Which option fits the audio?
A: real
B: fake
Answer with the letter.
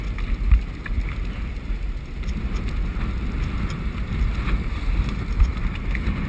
A